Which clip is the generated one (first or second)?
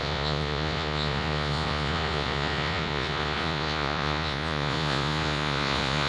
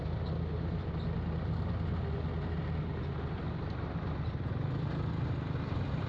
first